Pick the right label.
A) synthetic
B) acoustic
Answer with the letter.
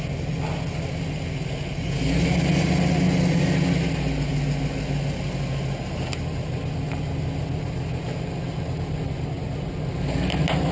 B